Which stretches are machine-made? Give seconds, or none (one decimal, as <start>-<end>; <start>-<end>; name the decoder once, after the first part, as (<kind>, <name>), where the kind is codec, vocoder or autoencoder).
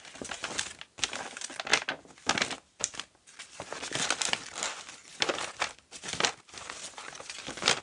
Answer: none